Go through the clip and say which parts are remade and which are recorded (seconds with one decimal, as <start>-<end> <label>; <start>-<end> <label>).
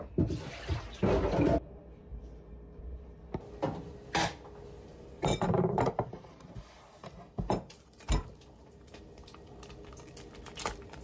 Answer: 0.0-2.1 recorded; 2.1-3.2 remade; 3.2-4.9 recorded; 4.9-9.0 remade; 9.0-11.0 recorded